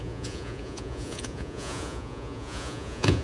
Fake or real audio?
fake